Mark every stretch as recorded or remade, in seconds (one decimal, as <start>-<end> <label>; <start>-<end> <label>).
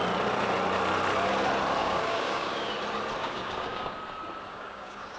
0.0-1.8 recorded; 1.8-2.7 remade; 2.7-3.2 recorded; 3.2-4.0 remade; 4.0-4.5 recorded; 4.5-5.2 remade